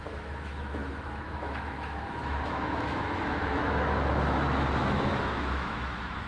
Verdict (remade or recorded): remade